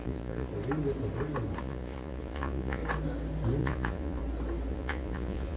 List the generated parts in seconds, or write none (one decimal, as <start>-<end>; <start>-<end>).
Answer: 0.0-0.5; 1.6-2.8; 3.6-4.2; 4.7-5.6